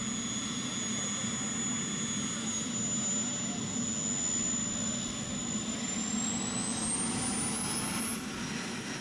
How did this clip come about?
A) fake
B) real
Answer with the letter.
B